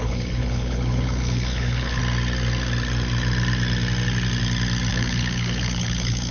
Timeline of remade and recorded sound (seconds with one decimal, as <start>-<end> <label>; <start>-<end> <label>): 0.0-2.0 remade; 2.0-4.9 recorded; 4.9-6.3 remade